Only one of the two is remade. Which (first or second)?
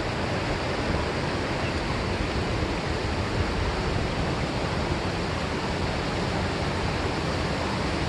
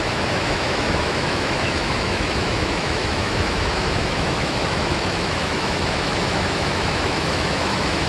second